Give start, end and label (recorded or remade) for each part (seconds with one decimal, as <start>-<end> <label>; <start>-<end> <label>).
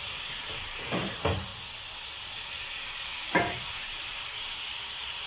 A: 0.0-1.5 remade; 1.5-3.0 recorded; 3.0-5.3 remade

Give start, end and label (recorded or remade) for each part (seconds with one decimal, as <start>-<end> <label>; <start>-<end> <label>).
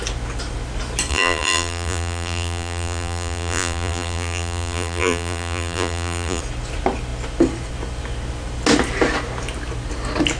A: 0.0-1.1 recorded; 1.1-6.4 remade; 6.4-10.4 recorded